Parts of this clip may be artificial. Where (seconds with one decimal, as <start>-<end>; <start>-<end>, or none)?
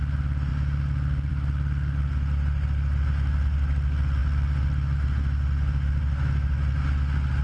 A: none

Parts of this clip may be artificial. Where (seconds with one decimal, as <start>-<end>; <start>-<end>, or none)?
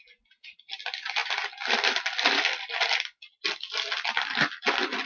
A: none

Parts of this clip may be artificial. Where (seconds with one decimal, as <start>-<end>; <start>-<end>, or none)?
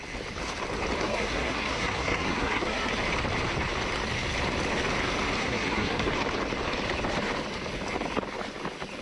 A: 1.0-2.9; 5.4-6.1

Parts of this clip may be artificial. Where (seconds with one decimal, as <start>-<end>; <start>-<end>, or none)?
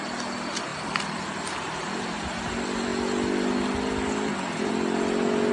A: none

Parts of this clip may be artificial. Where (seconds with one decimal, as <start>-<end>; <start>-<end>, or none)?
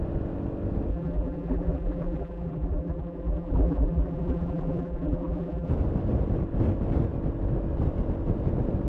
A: 0.9-5.7